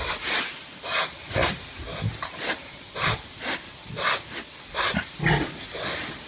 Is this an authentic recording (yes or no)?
yes